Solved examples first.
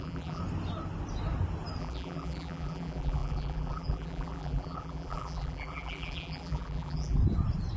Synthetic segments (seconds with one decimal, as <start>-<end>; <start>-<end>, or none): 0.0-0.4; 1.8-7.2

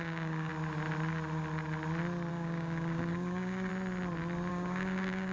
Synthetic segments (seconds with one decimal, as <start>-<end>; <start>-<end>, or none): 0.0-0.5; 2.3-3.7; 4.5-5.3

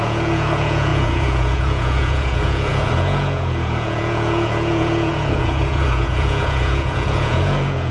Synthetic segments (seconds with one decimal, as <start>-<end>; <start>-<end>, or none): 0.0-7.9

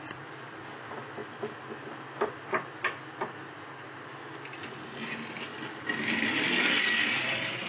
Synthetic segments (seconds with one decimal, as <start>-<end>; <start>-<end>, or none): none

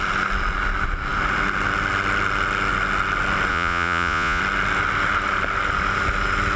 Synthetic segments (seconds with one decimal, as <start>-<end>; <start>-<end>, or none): 3.5-4.4